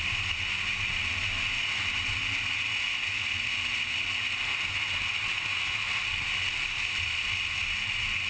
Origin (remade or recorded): recorded